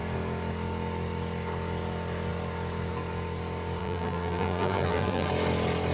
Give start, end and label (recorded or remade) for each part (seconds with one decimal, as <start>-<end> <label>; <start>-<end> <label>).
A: 0.0-3.8 recorded; 3.8-5.3 remade; 5.3-5.9 recorded